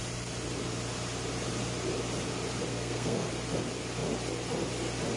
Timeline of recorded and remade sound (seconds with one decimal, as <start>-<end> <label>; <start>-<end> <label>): 0.0-2.7 recorded; 2.7-3.3 remade; 3.3-5.2 recorded

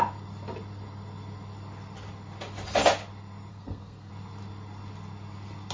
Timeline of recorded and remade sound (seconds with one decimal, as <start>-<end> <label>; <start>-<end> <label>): 0.0-3.5 recorded; 3.5-4.1 remade; 4.1-5.7 recorded